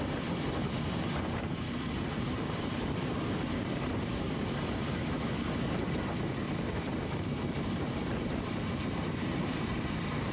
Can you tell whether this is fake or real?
fake